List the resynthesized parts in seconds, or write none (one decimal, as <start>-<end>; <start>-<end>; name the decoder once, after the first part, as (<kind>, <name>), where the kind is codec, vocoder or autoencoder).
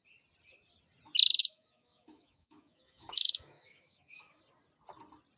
1.4-4.4 (autoencoder, DAC-VAE)